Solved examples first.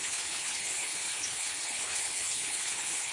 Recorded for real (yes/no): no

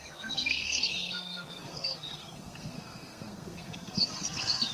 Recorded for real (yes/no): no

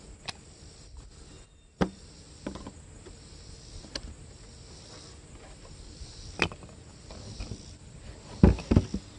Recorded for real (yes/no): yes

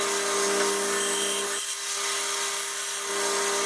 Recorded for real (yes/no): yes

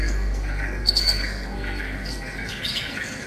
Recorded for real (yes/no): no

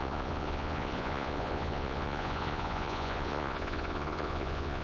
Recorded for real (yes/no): no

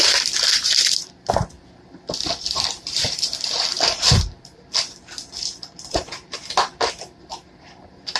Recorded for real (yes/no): no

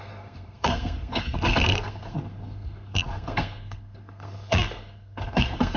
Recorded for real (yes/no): no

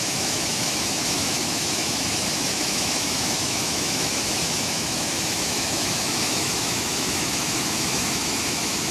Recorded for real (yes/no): no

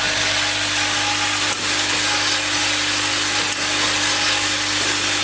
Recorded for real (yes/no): yes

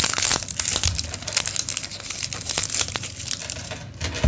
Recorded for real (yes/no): yes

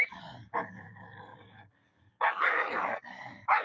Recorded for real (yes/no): no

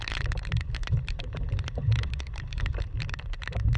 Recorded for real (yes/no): no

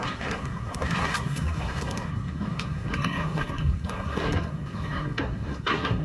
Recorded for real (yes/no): no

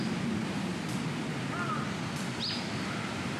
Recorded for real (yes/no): yes